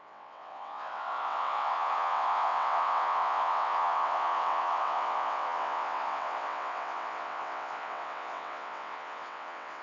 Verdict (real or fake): fake